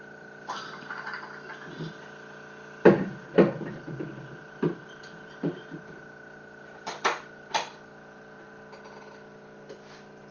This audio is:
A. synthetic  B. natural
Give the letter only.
B